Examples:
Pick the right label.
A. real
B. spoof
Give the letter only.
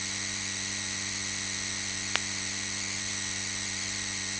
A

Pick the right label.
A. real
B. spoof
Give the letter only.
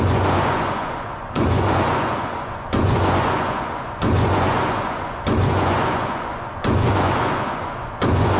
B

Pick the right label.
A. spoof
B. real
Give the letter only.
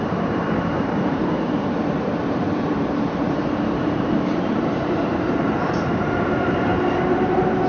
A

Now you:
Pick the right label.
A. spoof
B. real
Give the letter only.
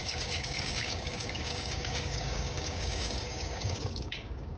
A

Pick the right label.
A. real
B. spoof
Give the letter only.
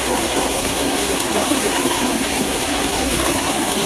B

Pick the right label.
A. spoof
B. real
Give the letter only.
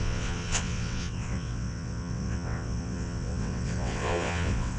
A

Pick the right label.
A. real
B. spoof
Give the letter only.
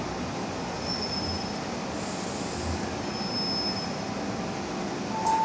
A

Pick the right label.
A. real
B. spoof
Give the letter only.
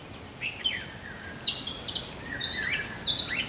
A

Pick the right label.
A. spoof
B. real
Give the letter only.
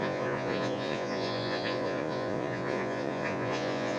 A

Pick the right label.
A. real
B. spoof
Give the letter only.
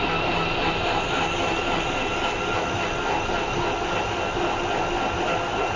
A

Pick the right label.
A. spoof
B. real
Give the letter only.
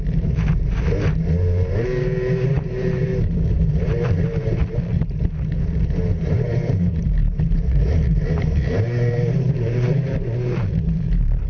A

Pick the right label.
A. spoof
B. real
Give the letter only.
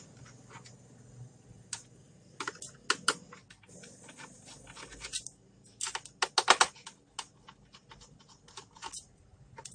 B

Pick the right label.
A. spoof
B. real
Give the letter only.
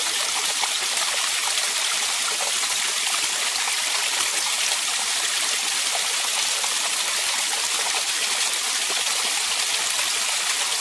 B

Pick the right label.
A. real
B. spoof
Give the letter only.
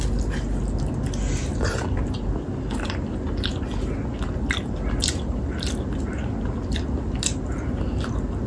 A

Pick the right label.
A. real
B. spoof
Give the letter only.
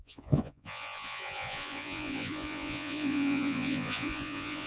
B